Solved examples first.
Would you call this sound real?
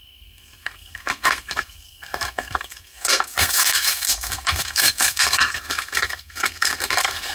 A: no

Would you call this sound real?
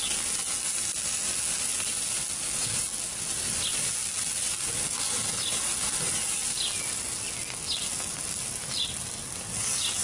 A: yes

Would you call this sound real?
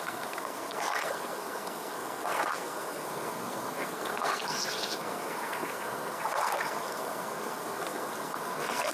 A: no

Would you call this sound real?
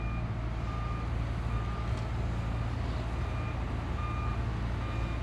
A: yes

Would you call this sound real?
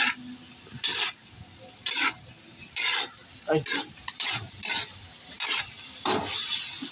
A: yes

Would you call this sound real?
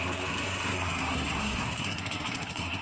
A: no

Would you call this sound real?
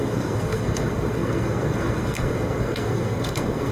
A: no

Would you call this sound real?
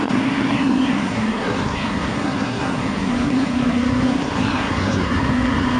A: no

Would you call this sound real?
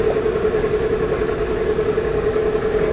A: yes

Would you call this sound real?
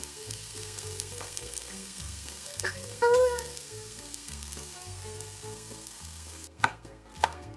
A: no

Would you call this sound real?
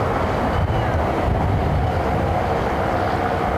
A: yes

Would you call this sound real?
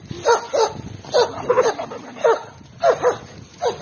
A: yes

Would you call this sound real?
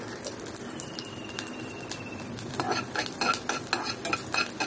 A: yes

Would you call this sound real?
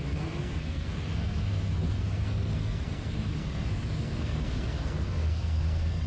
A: no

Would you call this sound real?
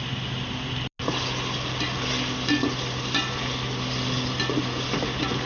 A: yes